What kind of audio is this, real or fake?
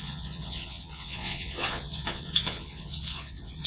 fake